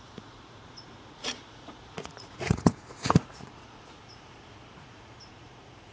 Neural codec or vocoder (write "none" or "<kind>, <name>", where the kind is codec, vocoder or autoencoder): vocoder, Vocos